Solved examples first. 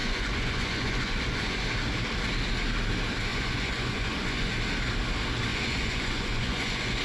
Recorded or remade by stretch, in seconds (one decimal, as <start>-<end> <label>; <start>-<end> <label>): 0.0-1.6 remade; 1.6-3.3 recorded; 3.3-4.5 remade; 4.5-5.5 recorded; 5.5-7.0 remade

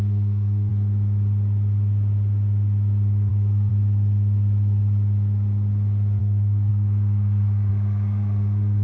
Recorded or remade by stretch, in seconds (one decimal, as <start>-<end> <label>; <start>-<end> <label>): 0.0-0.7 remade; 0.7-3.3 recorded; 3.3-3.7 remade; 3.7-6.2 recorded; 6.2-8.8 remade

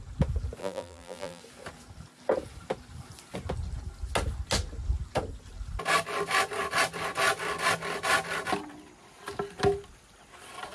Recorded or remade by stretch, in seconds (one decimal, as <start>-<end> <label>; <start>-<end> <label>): 0.0-0.6 recorded; 0.6-1.4 remade; 1.4-10.7 recorded

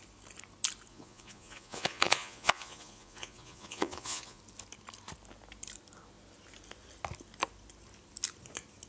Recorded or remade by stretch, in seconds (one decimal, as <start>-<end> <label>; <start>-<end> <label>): 0.0-0.9 recorded; 0.9-4.4 remade; 4.4-8.9 recorded

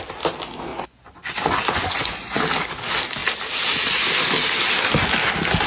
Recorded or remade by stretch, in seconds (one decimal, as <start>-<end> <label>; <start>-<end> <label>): 0.0-0.7 recorded; 0.7-2.4 remade; 2.4-5.7 recorded

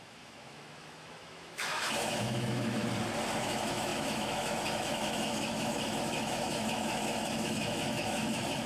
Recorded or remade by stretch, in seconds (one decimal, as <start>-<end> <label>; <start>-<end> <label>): 0.0-2.8 remade; 2.8-3.4 recorded; 3.4-8.7 remade

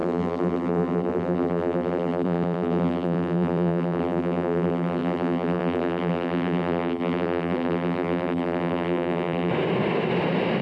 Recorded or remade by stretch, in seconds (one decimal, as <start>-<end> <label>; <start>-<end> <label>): 0.0-9.5 remade; 9.5-10.6 recorded